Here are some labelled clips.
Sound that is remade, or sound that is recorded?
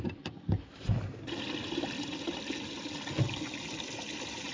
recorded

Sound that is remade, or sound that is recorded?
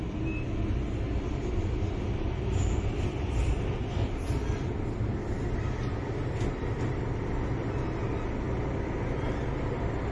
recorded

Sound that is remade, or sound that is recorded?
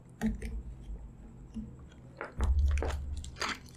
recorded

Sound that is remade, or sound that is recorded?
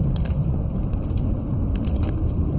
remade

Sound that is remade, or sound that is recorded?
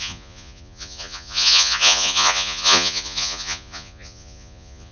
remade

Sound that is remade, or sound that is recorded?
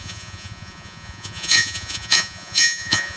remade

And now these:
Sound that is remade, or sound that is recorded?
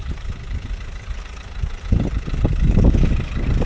recorded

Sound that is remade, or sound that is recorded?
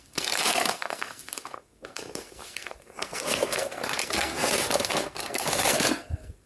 remade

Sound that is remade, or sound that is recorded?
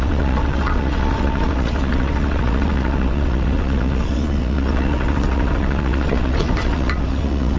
remade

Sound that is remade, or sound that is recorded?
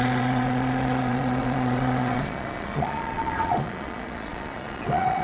remade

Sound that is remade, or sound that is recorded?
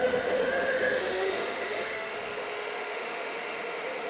remade